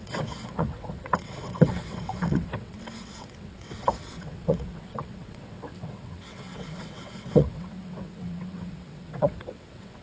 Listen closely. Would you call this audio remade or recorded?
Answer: remade